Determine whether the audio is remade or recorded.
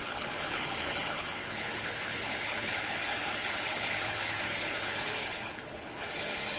remade